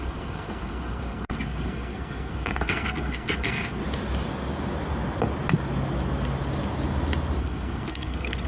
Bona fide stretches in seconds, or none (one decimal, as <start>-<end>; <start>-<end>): 3.8-7.4